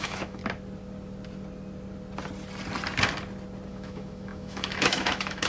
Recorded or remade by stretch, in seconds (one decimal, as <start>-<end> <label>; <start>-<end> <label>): 0.0-0.4 remade; 0.4-3.7 recorded; 3.7-5.5 remade